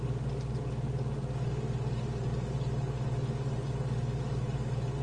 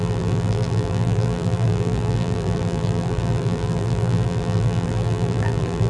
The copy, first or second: second